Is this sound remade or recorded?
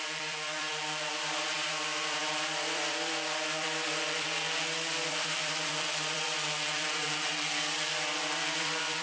remade